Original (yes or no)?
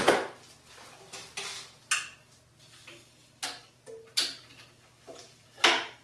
yes